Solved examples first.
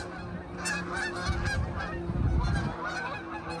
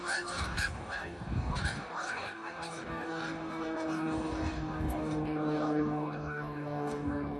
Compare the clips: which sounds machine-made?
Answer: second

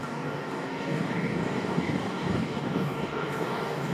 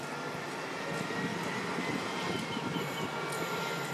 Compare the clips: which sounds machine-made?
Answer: first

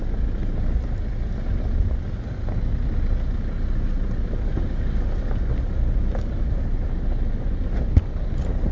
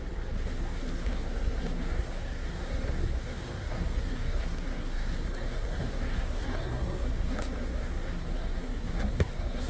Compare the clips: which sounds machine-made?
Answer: second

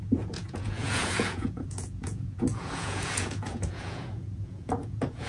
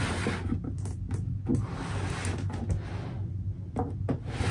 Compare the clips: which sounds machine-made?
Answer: first